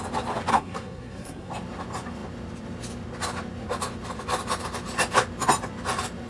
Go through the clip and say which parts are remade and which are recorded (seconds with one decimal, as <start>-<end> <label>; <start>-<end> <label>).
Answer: 0.0-0.5 recorded; 0.5-1.5 remade; 1.5-6.3 recorded